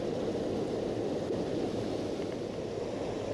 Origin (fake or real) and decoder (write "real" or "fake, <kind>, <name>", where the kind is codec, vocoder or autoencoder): real